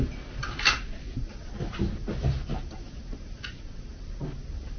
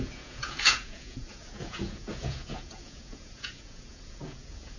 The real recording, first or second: first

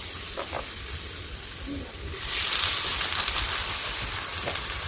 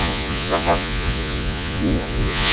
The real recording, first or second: first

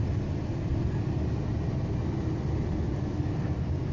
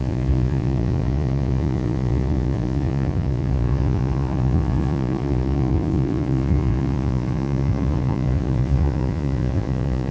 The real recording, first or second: first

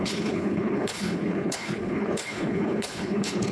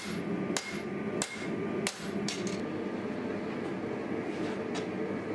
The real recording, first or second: second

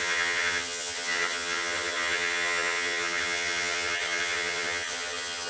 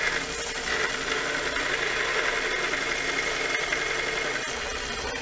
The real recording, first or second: second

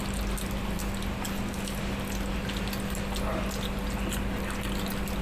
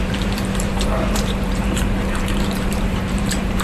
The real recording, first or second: first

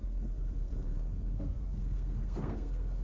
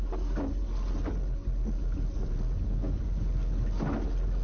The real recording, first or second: second